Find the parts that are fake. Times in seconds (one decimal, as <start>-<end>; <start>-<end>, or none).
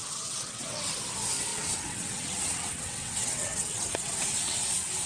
0.0-0.9; 1.5-4.6